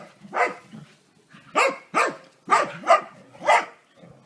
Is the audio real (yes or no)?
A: yes